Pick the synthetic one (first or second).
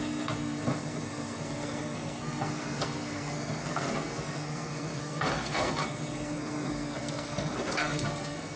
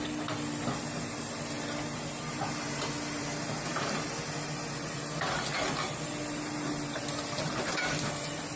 first